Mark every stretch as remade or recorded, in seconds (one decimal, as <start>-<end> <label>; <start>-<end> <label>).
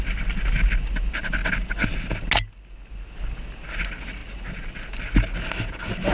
0.0-6.1 recorded